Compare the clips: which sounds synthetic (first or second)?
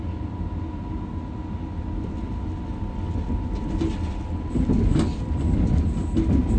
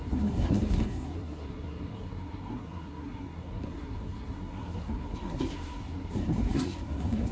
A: second